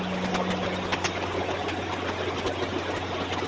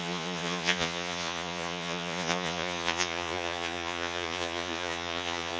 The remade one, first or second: second